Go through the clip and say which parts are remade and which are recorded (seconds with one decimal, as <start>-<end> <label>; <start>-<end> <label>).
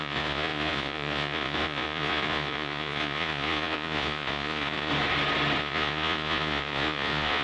0.0-4.9 remade; 4.9-5.6 recorded; 5.6-7.4 remade